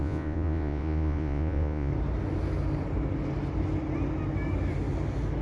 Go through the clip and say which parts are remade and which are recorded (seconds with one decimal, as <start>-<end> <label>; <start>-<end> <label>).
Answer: 0.0-1.9 remade; 1.9-5.4 recorded